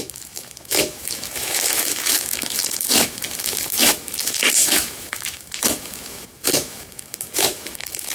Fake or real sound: fake